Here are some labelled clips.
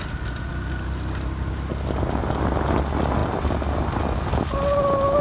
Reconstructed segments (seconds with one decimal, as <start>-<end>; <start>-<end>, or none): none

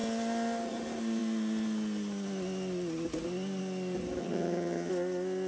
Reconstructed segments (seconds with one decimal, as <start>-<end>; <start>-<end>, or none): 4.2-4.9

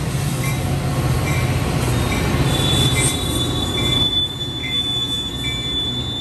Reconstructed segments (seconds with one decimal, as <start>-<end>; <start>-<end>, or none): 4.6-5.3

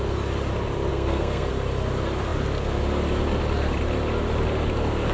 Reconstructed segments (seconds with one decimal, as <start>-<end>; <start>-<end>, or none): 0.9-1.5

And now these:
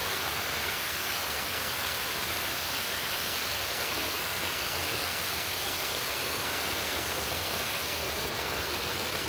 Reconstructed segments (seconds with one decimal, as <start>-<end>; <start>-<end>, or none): 0.0-9.3

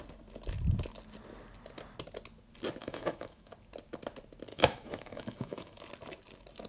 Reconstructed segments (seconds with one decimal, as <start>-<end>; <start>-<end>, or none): 2.8-3.5; 4.5-5.8

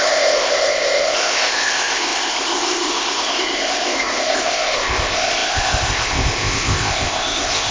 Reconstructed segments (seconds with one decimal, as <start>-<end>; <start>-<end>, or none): 0.0-7.7